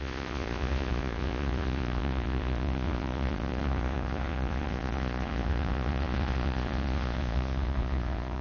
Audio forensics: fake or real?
fake